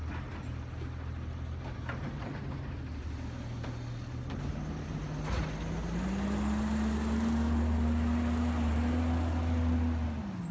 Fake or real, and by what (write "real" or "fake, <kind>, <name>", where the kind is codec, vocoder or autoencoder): real